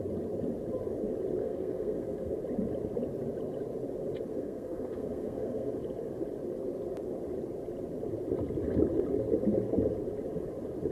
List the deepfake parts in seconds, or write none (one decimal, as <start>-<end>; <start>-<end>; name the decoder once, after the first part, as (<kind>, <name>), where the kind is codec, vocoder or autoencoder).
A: 1.4-2.4 (codec, SNAC); 4.3-5.7